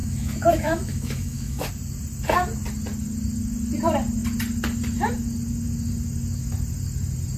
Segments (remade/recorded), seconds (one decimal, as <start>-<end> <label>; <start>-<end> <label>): 0.0-1.7 remade; 1.7-7.4 recorded